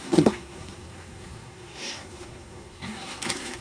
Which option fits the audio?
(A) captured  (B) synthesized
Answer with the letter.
B